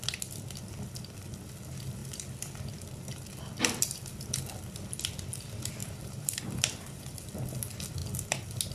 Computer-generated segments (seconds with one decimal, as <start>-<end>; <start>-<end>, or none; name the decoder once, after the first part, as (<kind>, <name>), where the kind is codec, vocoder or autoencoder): 5.8-7.0 (vocoder, BigVGAN v2)